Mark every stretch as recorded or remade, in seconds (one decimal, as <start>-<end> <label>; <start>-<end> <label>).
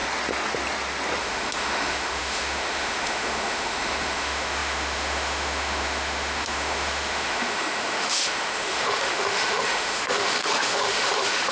0.0-1.2 recorded; 1.2-11.5 remade